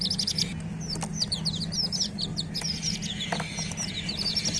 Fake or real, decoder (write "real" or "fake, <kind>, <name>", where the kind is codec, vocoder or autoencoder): real